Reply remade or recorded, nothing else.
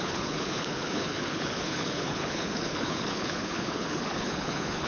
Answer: remade